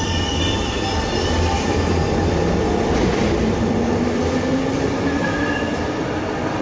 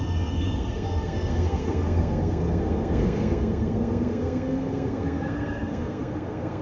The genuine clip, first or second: first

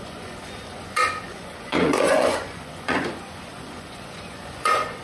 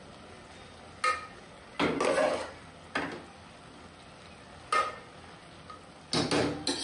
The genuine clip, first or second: second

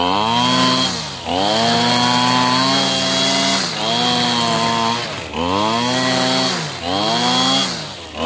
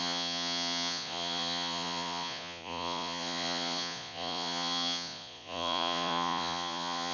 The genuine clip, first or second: first